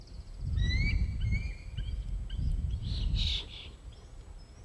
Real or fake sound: real